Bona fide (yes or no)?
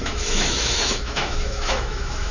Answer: no